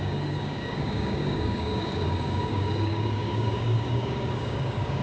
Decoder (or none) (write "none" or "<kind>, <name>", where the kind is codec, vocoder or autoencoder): codec, DAC